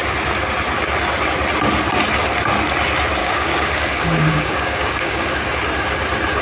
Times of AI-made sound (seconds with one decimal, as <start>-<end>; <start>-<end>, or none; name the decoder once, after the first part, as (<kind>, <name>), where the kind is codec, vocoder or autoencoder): 3.2-5.5 (codec, DAC)